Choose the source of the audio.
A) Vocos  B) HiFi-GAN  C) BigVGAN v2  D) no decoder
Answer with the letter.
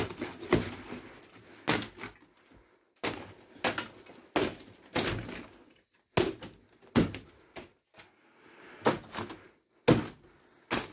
D